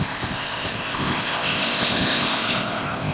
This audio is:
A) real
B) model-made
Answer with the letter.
B